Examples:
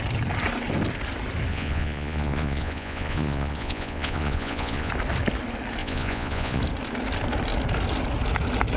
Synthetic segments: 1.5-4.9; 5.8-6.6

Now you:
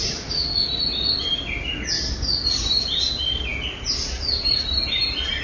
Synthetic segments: none

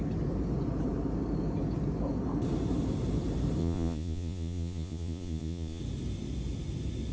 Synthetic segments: 3.6-5.8